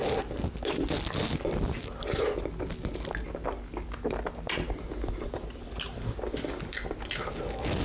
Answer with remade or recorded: recorded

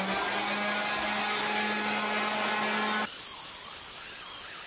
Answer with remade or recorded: recorded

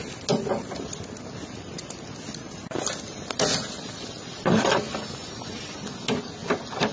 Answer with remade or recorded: recorded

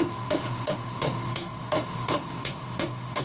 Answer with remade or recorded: remade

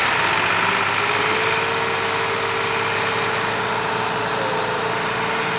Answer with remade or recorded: recorded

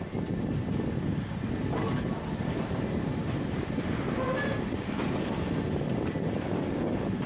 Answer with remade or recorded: recorded